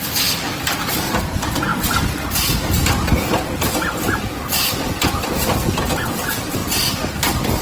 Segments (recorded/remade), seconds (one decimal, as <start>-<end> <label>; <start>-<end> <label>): 0.0-1.7 remade; 1.7-5.0 recorded; 5.0-6.6 remade; 6.6-7.6 recorded